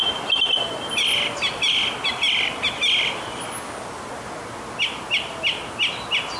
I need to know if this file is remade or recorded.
recorded